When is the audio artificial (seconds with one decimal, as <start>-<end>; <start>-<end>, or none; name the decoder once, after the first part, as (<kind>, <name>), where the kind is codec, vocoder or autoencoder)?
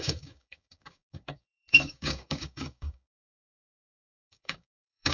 0.0-5.1 (codec, DAC)